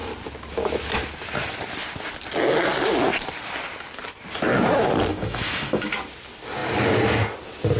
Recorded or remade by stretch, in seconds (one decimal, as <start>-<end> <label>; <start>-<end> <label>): 0.0-5.1 recorded; 5.1-5.9 remade; 5.9-7.8 recorded